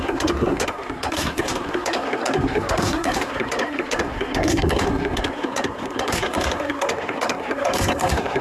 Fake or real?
fake